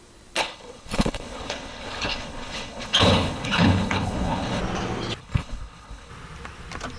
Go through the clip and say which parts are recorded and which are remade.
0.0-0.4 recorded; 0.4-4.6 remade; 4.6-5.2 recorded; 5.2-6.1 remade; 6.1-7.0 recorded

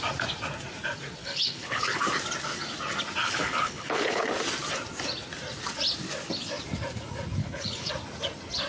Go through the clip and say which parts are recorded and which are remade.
0.0-1.2 recorded; 1.2-2.0 remade; 2.0-3.2 recorded; 3.2-4.3 remade; 4.3-7.4 recorded; 7.4-7.9 remade; 7.9-8.7 recorded

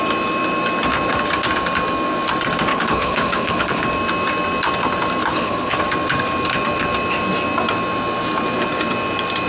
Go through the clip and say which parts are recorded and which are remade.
0.0-2.7 recorded; 2.7-3.8 remade; 3.8-5.2 recorded; 5.2-5.8 remade; 5.8-9.5 recorded